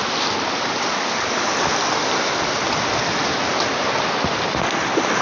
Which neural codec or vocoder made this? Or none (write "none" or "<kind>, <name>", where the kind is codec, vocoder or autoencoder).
none